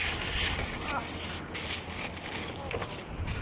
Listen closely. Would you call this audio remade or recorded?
recorded